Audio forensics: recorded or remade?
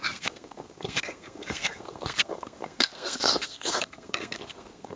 remade